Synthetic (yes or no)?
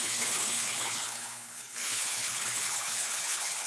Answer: yes